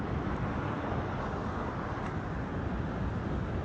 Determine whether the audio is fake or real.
real